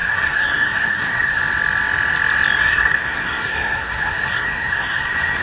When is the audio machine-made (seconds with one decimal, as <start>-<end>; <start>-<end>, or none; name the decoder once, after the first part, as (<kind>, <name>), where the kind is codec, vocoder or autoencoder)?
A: 0.0-1.4 (codec, SNAC); 2.6-5.4